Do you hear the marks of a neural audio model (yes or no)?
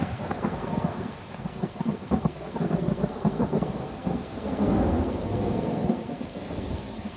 yes